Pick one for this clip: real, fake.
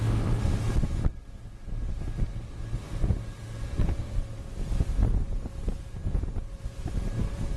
real